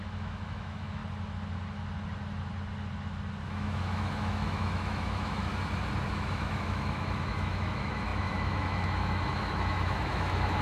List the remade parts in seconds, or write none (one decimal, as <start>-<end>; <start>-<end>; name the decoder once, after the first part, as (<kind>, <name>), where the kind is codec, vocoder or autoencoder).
0.0-1.0 (autoencoder, DAC-VAE); 3.5-5.5; 6.1-10.6